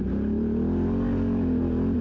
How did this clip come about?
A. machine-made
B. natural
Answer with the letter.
B